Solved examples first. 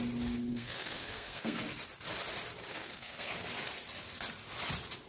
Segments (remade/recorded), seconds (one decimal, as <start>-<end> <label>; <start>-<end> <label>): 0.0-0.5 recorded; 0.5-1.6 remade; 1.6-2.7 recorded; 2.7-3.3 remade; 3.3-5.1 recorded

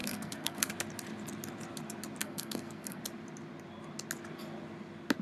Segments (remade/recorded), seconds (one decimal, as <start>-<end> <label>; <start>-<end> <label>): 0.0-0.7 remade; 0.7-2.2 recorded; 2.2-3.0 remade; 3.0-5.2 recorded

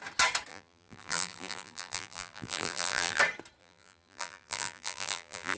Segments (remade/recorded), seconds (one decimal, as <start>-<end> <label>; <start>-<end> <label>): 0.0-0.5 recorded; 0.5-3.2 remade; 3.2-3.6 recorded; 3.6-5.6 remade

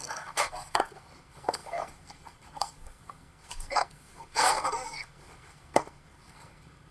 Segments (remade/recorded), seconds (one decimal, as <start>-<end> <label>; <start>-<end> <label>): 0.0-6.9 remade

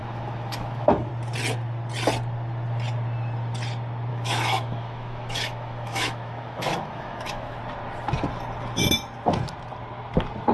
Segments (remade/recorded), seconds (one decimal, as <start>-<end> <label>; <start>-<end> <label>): 0.0-1.1 remade; 1.1-4.1 recorded; 4.1-7.6 remade; 7.6-10.5 recorded

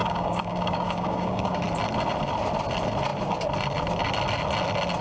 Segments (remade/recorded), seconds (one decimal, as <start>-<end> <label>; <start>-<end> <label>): 0.0-1.6 remade; 1.6-5.0 recorded

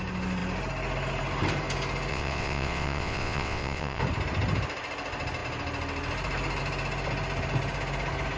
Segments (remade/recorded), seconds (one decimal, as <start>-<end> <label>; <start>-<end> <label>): 0.0-2.1 recorded; 2.1-4.0 remade; 4.0-8.4 recorded